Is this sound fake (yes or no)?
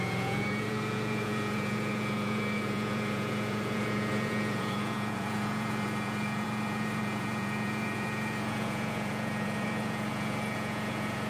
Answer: yes